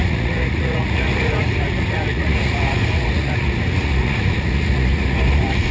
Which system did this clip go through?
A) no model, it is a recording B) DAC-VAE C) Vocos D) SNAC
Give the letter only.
C